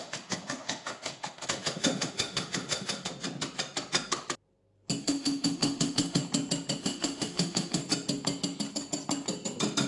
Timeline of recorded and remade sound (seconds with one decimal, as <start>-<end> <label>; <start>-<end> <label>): 0.0-3.1 remade; 3.1-5.0 recorded; 5.0-6.2 remade; 6.2-6.8 recorded; 6.8-7.8 remade; 7.8-9.9 recorded